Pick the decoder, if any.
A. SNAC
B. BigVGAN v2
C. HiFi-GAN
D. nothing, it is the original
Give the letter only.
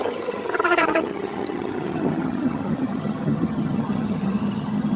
C